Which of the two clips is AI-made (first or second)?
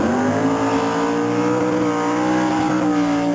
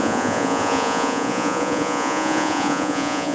second